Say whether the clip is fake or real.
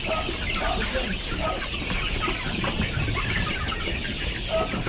real